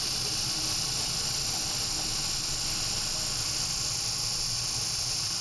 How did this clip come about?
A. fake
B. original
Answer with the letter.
B